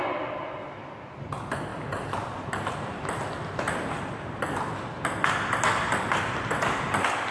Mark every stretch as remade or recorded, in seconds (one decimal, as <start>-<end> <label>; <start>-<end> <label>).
0.0-7.3 recorded